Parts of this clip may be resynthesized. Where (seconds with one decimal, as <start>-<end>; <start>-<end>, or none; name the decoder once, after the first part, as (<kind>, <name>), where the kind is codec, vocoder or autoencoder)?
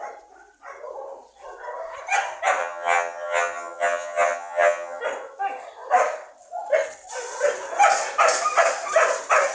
2.6-5.0 (vocoder, HiFi-GAN)